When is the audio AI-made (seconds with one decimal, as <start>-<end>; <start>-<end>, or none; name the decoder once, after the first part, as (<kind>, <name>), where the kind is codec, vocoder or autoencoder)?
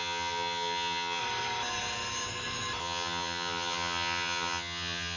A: 0.0-1.2 (vocoder, HiFi-GAN); 2.8-5.2